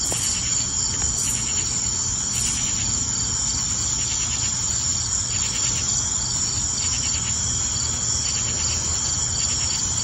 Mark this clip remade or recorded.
recorded